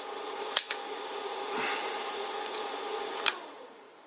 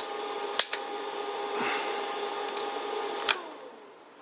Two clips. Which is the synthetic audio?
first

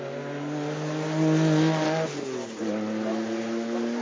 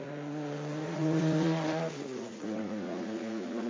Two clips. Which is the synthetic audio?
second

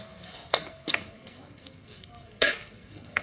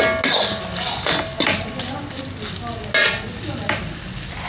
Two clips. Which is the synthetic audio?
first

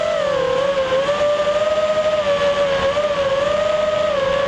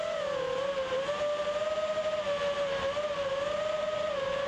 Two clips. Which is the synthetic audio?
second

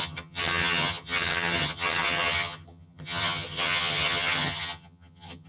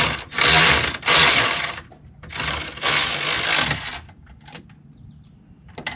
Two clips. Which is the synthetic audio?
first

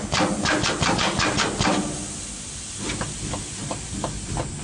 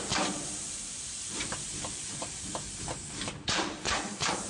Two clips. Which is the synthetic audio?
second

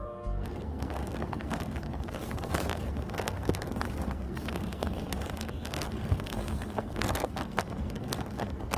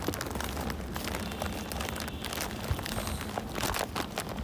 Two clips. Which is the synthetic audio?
first